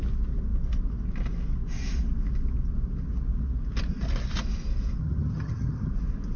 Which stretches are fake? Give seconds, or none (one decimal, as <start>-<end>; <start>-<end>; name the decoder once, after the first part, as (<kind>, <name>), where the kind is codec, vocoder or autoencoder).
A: 5.0-5.9 (vocoder, HiFi-GAN)